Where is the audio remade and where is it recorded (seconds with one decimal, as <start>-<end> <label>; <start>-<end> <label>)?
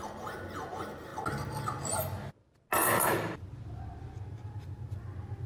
0.0-5.5 recorded